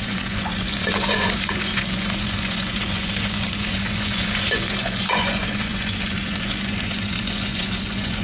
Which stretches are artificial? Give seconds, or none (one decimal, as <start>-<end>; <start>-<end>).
0.0-8.2